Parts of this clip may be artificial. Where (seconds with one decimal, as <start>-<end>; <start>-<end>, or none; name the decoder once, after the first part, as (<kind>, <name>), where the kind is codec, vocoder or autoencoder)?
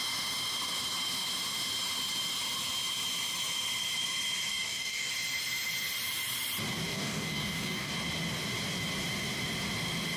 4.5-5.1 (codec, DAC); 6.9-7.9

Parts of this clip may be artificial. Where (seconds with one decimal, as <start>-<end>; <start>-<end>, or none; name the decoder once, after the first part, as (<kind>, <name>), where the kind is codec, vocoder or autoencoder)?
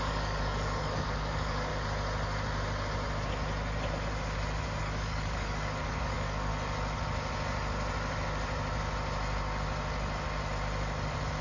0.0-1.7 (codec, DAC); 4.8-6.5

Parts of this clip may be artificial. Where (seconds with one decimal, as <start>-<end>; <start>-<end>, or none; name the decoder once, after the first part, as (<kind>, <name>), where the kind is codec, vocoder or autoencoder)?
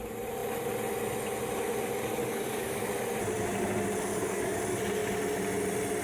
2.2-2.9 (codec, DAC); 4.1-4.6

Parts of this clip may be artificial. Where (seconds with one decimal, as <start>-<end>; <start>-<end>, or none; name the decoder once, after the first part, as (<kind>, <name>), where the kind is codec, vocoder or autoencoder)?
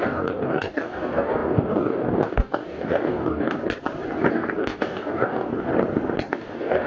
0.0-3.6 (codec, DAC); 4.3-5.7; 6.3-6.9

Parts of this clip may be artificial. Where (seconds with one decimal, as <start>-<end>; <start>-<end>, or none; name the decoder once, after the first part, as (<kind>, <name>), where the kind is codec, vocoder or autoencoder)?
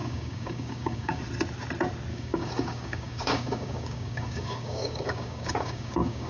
0.0-1.2 (codec, DAC); 2.1-6.3